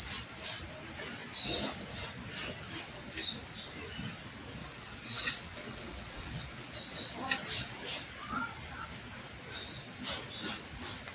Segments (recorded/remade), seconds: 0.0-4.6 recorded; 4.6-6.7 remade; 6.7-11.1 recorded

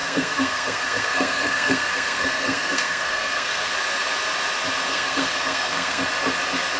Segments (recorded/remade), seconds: 0.0-3.7 remade; 3.7-4.9 recorded; 4.9-6.0 remade; 6.0-6.8 recorded

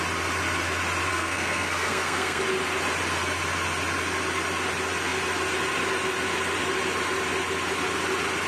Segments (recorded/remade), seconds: 0.0-1.1 recorded; 1.1-2.4 remade; 2.4-8.5 recorded

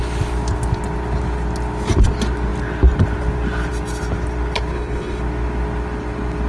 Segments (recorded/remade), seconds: 0.0-4.7 recorded; 4.7-5.2 remade; 5.2-6.5 recorded

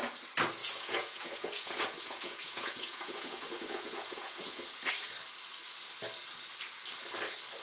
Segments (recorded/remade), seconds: 0.0-0.6 recorded; 0.6-4.9 remade; 4.9-7.6 recorded

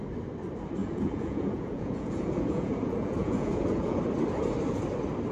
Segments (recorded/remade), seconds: 0.0-0.8 recorded; 0.8-4.0 remade; 4.0-5.3 recorded

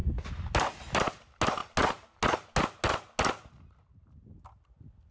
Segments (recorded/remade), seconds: 0.0-5.1 recorded